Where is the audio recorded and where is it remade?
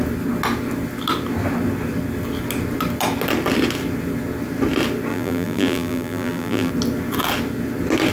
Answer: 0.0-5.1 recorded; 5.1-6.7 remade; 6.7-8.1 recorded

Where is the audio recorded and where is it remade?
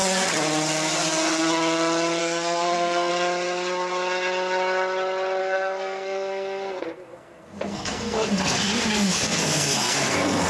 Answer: 0.0-2.2 recorded; 2.2-3.1 remade; 3.1-5.4 recorded; 5.4-10.5 remade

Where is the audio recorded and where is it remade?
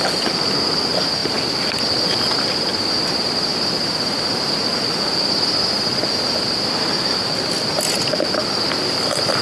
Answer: 0.0-1.2 recorded; 1.2-2.2 remade; 2.2-9.4 recorded